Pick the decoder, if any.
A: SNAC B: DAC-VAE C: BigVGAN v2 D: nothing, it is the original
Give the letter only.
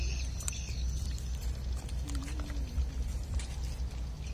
D